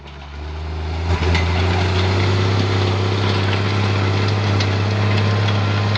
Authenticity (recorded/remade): recorded